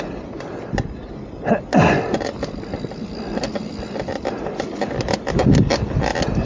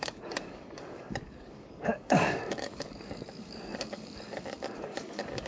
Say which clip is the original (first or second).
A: first